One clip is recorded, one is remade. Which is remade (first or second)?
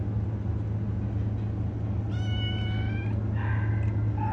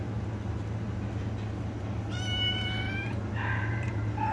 second